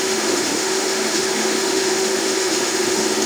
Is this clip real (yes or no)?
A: no